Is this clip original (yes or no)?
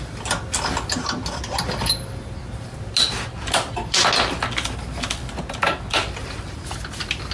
yes